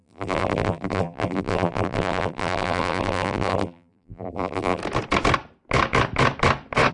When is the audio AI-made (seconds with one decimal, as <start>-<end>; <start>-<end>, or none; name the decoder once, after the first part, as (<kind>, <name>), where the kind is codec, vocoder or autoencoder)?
0.0-4.8 (vocoder, BigVGAN v2)